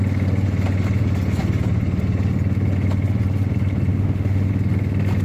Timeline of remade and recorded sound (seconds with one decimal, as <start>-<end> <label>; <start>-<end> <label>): 0.0-3.9 recorded; 3.9-4.5 remade; 4.5-5.2 recorded